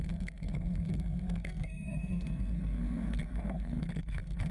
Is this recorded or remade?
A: remade